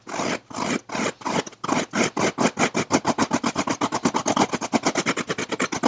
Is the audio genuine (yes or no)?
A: yes